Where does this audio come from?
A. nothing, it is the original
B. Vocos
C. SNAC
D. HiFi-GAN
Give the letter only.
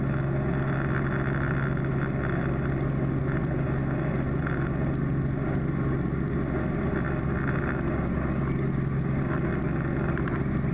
A